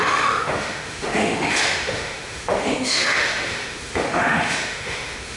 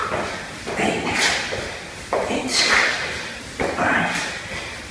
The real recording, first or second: second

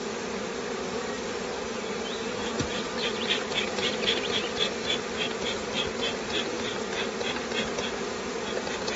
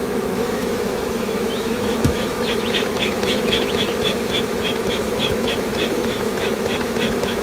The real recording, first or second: first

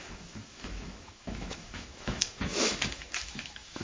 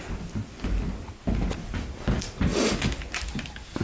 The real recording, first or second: second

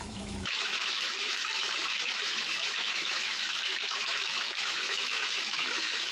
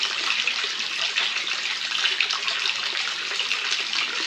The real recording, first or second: second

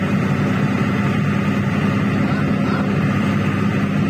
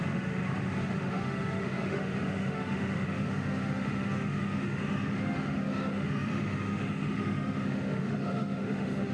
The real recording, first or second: first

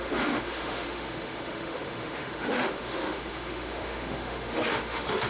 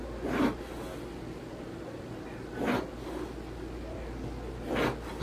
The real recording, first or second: second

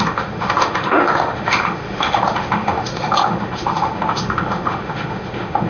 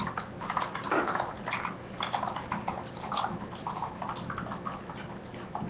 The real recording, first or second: second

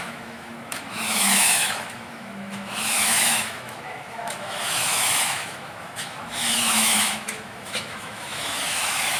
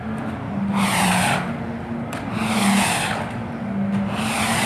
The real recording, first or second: second